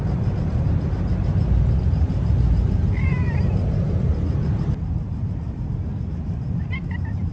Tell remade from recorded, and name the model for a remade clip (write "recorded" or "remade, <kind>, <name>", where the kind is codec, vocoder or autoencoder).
recorded